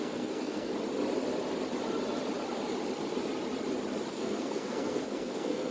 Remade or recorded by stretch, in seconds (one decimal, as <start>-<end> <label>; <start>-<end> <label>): 0.0-0.7 remade; 0.7-4.1 recorded; 4.1-5.7 remade